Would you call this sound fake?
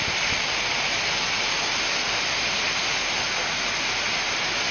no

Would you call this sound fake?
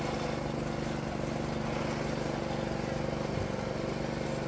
no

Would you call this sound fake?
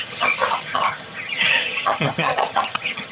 yes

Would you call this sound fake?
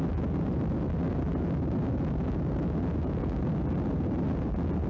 no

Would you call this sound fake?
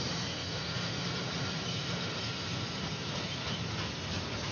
no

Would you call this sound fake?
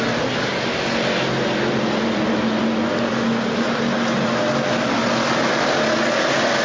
no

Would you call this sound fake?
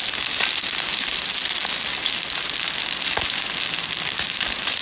no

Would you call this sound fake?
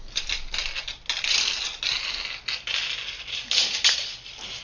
no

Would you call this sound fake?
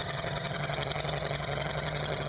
yes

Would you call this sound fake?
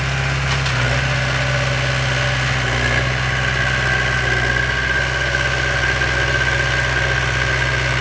no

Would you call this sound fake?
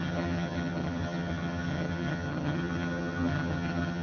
yes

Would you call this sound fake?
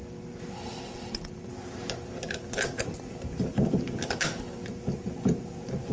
no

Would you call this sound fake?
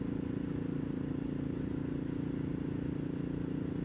no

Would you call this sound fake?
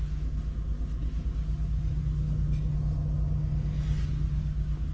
no